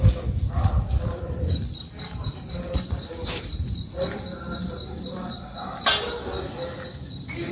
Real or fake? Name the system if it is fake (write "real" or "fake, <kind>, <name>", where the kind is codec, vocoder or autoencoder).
real